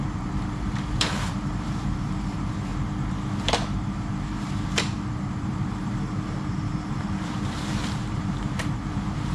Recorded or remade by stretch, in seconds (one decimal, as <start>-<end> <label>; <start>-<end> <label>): 0.0-2.7 remade; 2.7-3.4 recorded; 3.4-9.3 remade